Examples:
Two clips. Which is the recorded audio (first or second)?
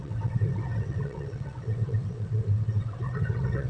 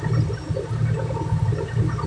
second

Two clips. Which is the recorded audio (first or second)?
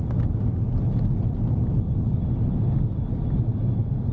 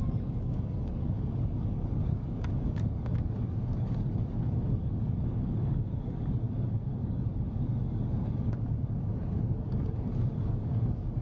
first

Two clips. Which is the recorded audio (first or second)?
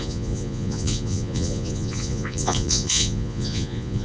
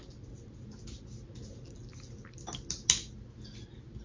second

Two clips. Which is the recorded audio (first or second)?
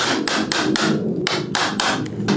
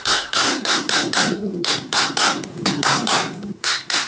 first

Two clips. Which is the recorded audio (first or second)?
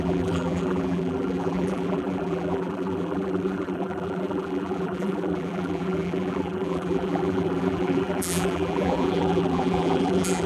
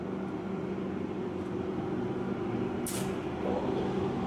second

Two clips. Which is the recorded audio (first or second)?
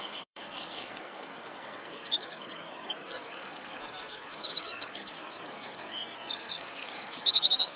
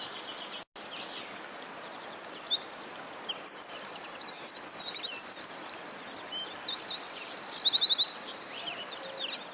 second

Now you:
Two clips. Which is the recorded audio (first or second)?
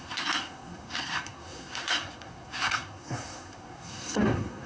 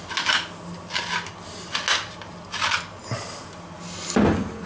second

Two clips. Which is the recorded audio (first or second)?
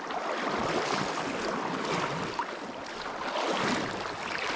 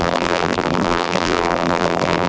first